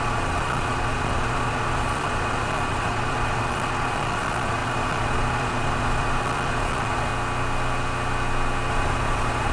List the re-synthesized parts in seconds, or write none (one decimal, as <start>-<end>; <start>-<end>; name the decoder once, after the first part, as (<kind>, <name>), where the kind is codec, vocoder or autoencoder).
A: 0.0-7.1 (vocoder, Vocos); 8.7-9.5

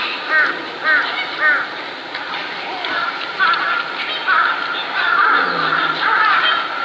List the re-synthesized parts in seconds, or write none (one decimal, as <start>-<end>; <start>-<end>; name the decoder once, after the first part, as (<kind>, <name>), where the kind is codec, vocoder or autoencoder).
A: 2.4-5.0 (vocoder, BigVGAN v2)

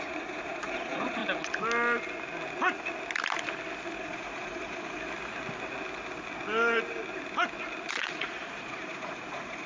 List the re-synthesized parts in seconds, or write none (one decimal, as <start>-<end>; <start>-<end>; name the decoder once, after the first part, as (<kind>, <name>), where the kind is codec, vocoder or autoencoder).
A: 0.0-1.2 (vocoder, Vocos); 4.0-5.0; 7.9-9.7

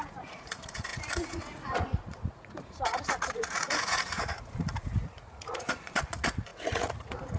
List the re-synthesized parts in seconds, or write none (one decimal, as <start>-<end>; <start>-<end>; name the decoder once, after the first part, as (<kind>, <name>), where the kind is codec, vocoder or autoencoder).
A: 0.0-7.4 (vocoder, Vocos)

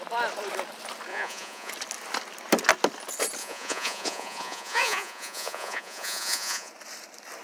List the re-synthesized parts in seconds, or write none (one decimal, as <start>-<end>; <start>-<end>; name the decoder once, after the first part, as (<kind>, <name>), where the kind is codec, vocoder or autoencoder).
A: 1.1-1.7 (vocoder, Vocos); 3.4-6.7

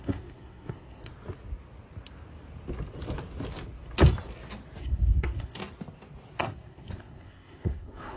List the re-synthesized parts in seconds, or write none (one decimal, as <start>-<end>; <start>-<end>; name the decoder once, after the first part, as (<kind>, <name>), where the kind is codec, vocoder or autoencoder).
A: 0.0-1.1 (codec, SNAC); 4.8-5.6; 6.3-8.2

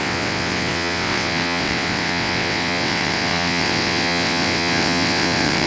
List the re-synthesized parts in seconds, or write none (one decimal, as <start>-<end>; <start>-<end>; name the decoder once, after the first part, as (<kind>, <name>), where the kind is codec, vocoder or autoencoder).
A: 0.0-5.7 (vocoder, WaveNeXt)